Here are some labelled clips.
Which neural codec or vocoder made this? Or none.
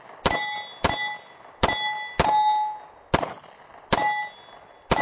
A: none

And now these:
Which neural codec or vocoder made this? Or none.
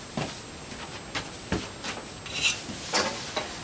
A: none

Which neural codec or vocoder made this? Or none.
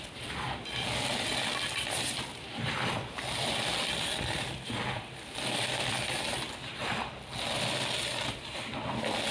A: none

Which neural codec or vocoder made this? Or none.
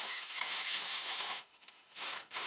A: autoencoder, DAC-VAE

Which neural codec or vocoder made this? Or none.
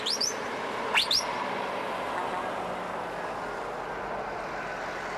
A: none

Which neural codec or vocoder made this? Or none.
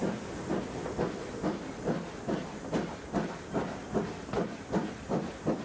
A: vocoder, BigVGAN v2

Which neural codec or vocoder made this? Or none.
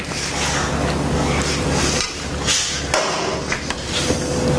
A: none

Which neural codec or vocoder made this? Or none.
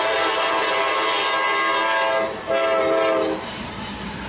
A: none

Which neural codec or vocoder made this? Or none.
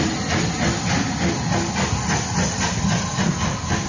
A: none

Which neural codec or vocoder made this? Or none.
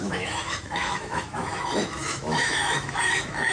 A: autoencoder, DAC-VAE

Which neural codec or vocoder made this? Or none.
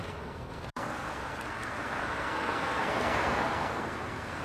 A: codec, SNAC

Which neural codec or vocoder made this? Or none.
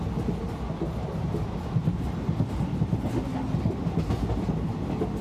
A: none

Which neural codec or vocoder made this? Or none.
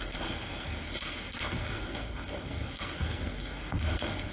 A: codec, SNAC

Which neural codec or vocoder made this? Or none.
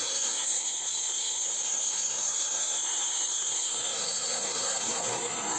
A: codec, SNAC